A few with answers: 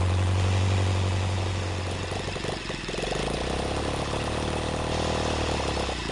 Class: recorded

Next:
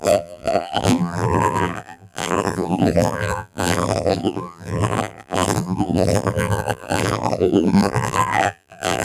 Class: remade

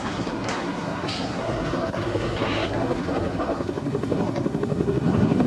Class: remade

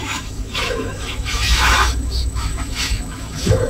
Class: remade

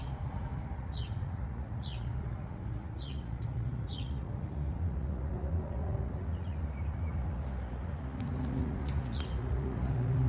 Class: remade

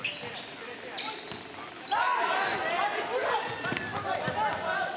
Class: recorded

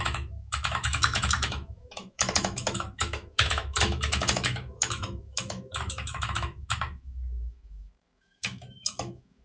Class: remade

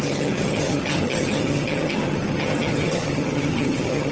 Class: remade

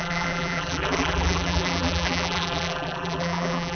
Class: remade